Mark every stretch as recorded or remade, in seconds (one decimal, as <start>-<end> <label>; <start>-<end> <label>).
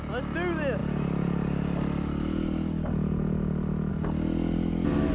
0.0-5.1 recorded